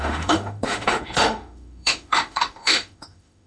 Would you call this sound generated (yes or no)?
yes